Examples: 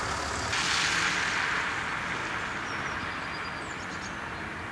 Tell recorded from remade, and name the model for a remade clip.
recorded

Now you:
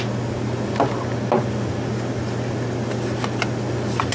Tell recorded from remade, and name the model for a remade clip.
recorded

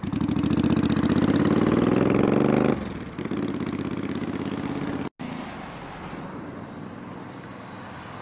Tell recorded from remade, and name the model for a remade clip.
recorded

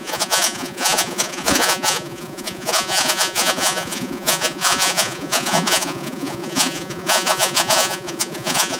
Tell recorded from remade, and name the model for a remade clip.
remade, vocoder, Vocos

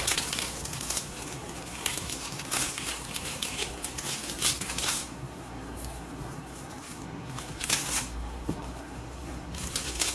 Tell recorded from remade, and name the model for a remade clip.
remade, codec, SNAC